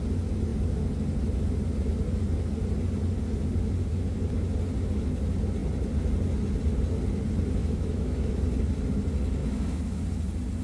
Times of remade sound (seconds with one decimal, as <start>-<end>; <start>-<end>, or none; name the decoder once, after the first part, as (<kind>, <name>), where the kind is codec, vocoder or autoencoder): 7.6-8.3 (autoencoder, DAC-VAE); 9.4-10.0